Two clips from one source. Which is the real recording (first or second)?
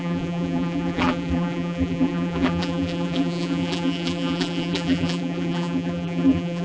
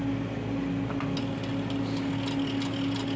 second